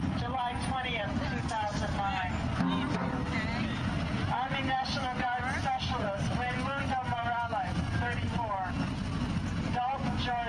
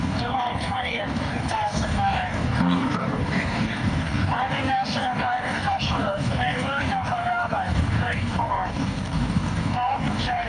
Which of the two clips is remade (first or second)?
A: second